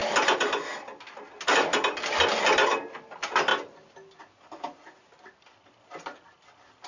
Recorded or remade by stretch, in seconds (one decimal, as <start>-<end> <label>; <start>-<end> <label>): 0.0-6.9 recorded